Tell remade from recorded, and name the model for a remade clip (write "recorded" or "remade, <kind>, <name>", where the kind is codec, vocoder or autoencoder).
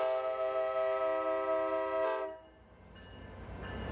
recorded